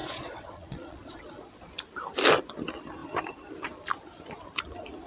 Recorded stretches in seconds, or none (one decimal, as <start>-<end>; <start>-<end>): 1.7-5.1